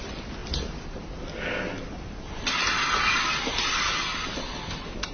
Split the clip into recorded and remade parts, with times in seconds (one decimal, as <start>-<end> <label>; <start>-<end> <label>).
0.0-0.4 remade; 0.4-3.5 recorded; 3.5-5.1 remade

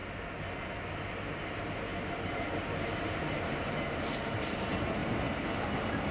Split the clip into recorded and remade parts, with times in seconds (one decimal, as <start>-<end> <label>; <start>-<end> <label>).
0.0-1.9 recorded; 1.9-4.6 remade; 4.6-6.1 recorded

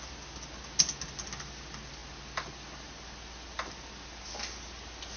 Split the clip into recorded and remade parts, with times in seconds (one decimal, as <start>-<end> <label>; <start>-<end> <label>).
0.0-5.2 recorded

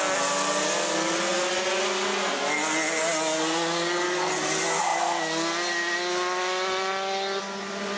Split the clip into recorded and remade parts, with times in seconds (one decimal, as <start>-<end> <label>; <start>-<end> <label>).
0.0-8.0 recorded

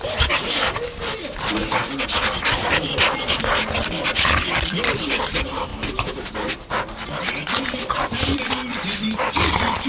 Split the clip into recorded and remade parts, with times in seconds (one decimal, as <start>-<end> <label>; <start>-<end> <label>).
0.0-1.6 remade; 1.6-4.2 recorded; 4.2-5.7 remade; 5.7-6.5 recorded; 6.5-9.9 remade

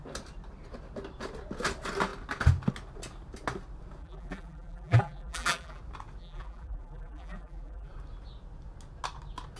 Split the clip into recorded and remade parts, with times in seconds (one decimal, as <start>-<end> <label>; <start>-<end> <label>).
0.0-4.0 recorded; 4.0-5.8 remade; 5.8-6.2 recorded; 6.2-7.9 remade; 7.9-9.6 recorded

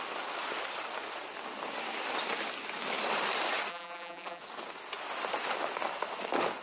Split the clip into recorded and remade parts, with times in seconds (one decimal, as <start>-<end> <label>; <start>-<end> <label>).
0.0-3.7 recorded; 3.7-4.4 remade; 4.4-6.6 recorded

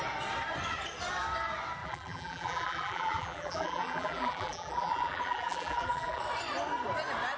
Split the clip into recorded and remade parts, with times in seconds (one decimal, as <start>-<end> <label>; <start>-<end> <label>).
0.0-1.8 recorded; 1.8-6.2 remade; 6.2-7.4 recorded